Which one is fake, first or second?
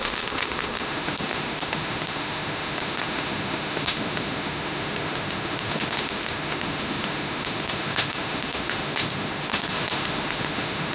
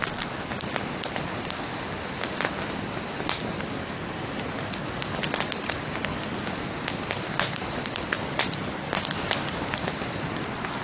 first